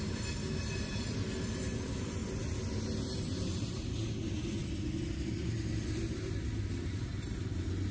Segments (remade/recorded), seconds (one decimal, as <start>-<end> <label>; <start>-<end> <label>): 0.0-7.9 recorded